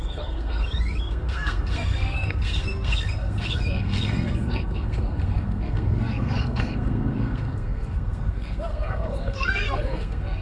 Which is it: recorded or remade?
remade